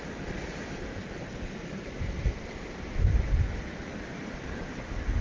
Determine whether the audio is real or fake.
real